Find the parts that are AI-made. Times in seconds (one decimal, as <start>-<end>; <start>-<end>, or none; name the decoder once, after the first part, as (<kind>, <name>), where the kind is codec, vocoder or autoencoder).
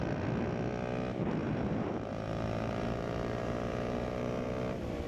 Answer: 1.4-4.5 (vocoder, BigVGAN v2)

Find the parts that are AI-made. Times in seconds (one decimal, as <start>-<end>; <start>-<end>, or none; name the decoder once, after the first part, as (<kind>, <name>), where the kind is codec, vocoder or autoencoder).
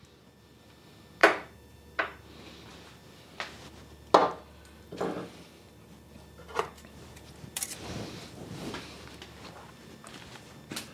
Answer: 1.2-2.0 (vocoder, BigVGAN v2); 4.2-9.1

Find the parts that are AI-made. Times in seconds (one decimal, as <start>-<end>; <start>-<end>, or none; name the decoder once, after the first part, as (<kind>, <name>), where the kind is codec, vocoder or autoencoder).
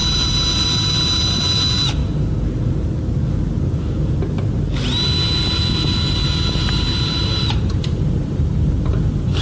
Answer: 0.0-2.0 (vocoder, BigVGAN v2); 6.5-9.4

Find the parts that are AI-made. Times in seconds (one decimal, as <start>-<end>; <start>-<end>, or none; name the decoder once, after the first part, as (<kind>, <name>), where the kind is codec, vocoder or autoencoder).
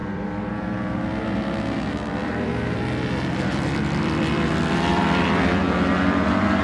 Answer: 0.0-1.4 (vocoder, BigVGAN v2); 2.2-5.4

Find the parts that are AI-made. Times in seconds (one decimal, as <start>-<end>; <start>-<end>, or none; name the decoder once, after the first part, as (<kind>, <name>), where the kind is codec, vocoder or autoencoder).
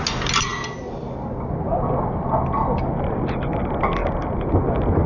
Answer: none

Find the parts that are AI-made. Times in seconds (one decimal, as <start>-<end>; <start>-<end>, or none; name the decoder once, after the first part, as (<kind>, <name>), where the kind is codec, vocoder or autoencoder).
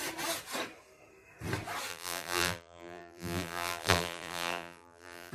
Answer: 1.9-5.3 (vocoder, BigVGAN v2)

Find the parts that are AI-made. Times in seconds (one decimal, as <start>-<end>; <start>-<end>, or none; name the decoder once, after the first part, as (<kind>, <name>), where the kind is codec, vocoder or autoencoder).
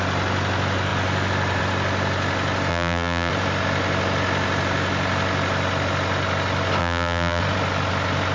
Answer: 2.7-3.3 (vocoder, BigVGAN v2); 6.8-7.4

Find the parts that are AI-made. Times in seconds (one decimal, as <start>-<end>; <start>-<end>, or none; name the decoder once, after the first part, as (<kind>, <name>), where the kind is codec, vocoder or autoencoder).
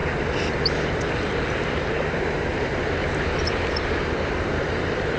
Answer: 2.5-5.2 (vocoder, BigVGAN v2)